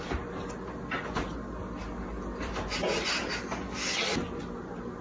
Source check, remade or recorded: recorded